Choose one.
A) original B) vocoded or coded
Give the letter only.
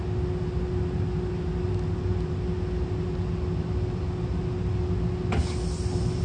A